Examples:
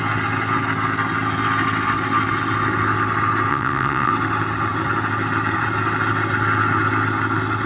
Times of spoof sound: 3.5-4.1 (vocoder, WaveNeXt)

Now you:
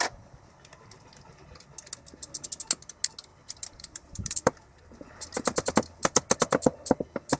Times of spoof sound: 3.3-4.8 (vocoder, BigVGAN v2)